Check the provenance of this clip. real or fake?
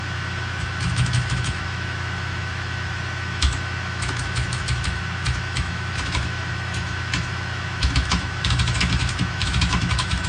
fake